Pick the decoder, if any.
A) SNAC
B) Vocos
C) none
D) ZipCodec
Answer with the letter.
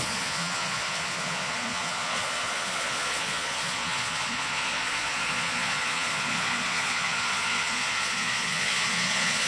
B